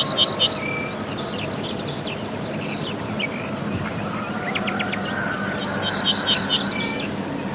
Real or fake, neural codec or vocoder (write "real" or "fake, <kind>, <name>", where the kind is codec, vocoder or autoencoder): real